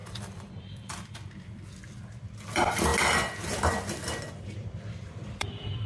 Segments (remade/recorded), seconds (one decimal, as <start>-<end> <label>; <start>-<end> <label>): 0.0-2.9 remade; 2.9-4.4 recorded; 4.4-5.9 remade

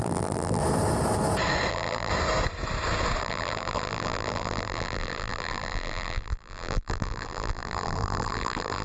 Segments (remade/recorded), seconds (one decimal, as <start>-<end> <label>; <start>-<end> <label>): 0.0-0.6 remade; 0.6-1.7 recorded; 1.7-2.1 remade; 2.1-3.2 recorded; 3.2-8.8 remade

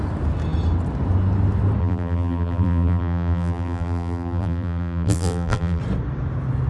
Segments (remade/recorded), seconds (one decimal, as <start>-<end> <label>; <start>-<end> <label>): 0.0-1.8 recorded; 1.8-5.8 remade; 5.8-6.7 recorded